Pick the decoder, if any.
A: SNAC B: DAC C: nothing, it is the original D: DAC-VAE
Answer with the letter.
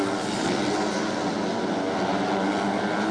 C